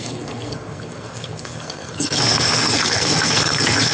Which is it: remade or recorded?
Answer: remade